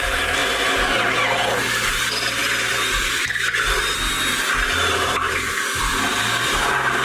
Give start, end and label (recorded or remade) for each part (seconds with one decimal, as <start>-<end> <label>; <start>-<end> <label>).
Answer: 0.0-0.4 remade; 0.4-1.9 recorded; 1.9-2.4 remade; 2.4-4.9 recorded; 4.9-7.0 remade